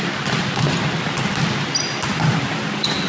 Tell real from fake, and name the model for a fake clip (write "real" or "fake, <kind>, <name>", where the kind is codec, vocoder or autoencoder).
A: real